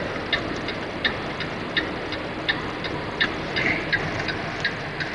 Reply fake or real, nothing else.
real